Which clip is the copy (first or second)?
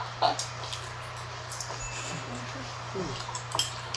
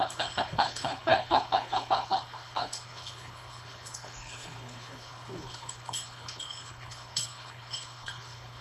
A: second